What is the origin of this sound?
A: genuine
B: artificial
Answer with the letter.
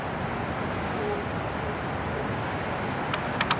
A